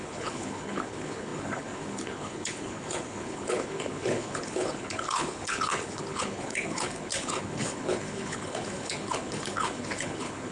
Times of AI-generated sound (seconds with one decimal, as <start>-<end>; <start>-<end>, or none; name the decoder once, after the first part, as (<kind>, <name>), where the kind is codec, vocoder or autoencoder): 0.0-10.5 (codec, HILCodec)